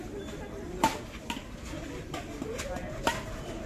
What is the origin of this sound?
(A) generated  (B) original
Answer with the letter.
B